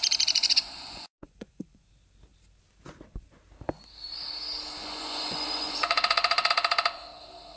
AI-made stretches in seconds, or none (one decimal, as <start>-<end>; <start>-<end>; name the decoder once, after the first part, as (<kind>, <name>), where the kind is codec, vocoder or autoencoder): 0.4-1.9 (vocoder, Vocos); 4.8-6.5